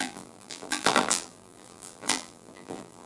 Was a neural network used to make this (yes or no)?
yes